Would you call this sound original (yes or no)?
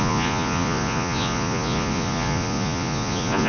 no